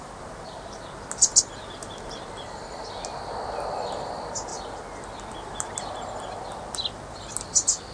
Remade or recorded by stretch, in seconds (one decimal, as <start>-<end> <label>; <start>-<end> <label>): 0.0-7.9 recorded